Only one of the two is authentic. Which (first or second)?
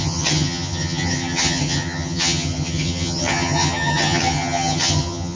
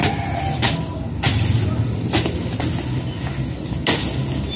second